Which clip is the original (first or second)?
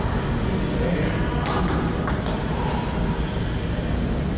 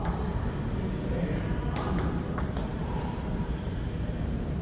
first